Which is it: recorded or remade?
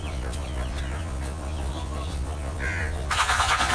remade